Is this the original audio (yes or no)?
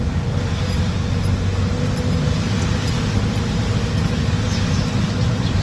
yes